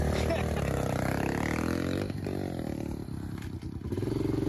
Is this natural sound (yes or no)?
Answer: yes